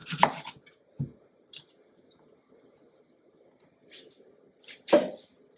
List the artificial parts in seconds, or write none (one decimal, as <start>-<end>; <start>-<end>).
none